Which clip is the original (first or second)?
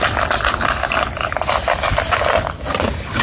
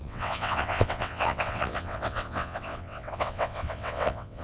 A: first